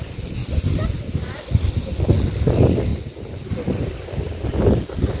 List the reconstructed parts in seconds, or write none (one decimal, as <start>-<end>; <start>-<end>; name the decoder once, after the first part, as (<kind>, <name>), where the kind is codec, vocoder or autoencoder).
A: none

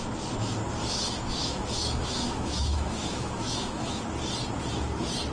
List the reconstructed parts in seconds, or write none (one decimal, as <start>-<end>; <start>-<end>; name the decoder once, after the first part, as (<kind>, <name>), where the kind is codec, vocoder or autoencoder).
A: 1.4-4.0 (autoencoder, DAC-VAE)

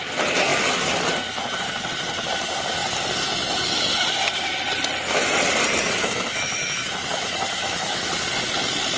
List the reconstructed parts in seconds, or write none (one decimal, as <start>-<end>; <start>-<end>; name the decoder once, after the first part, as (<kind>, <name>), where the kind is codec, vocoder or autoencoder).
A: 6.0-8.1 (autoencoder, DAC-VAE)